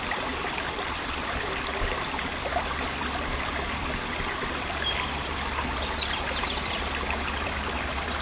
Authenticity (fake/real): fake